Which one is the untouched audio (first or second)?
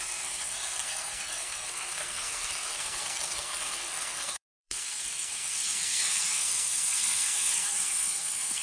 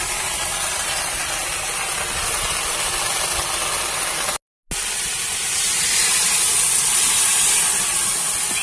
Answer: second